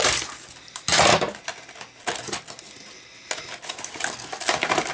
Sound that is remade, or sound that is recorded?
recorded